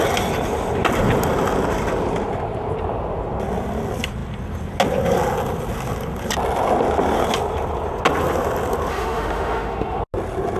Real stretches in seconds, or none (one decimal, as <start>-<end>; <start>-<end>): 0.0-8.9; 10.0-10.6